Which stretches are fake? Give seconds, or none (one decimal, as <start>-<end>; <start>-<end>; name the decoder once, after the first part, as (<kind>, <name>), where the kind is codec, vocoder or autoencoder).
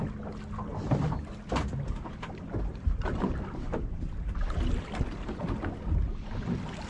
2.7-3.7 (vocoder, BigVGAN v2)